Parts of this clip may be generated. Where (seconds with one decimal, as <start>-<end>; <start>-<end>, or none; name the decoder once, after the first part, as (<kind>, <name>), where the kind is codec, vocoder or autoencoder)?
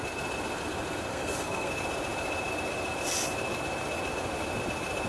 1.1-1.7 (codec, SNAC)